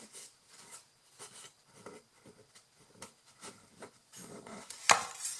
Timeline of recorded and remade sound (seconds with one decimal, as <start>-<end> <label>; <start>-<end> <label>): 0.0-0.7 remade; 0.7-3.9 recorded; 3.9-4.8 remade; 4.8-5.4 recorded